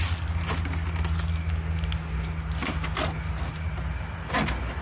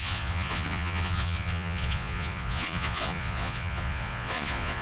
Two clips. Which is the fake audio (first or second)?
second